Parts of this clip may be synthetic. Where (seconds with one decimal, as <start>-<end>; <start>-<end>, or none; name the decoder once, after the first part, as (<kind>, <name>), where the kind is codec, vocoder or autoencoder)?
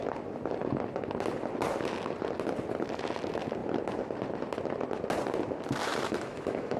5.9-6.8 (autoencoder, DAC-VAE)